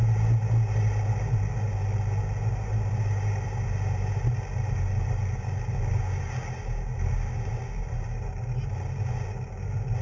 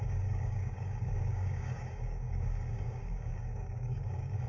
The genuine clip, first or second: first